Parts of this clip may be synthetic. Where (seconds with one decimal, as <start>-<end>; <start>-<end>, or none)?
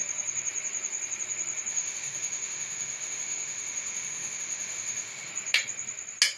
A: 1.7-5.3